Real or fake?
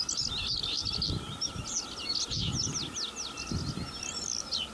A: real